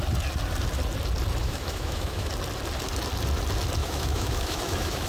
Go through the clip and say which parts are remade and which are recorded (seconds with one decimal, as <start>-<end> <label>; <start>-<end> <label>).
0.0-1.4 recorded; 1.4-2.3 remade; 2.3-3.8 recorded; 3.8-5.1 remade